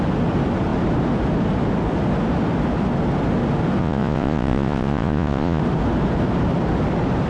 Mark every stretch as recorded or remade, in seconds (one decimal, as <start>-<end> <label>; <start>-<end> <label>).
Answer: 0.0-3.8 recorded; 3.8-5.6 remade; 5.6-7.3 recorded

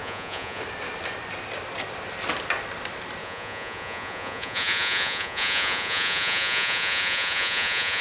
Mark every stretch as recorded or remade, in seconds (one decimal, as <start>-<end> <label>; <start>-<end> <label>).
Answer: 0.0-0.6 remade; 0.6-3.2 recorded; 3.2-8.0 remade

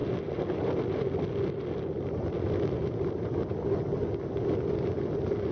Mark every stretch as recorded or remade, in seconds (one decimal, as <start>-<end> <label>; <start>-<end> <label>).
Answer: 0.0-5.5 recorded